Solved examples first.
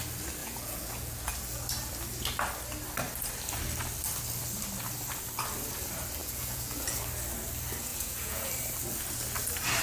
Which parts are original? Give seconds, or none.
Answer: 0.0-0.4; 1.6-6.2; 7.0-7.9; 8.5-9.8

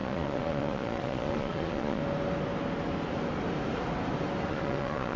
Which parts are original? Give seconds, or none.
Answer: 2.0-4.5

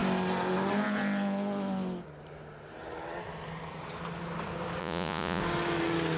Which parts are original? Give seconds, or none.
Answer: 0.0-4.8; 5.4-6.2

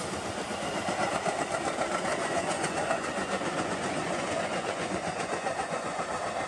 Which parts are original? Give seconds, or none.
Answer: 0.0-2.1; 6.0-6.5